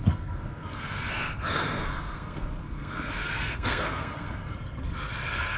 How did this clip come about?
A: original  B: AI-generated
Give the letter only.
B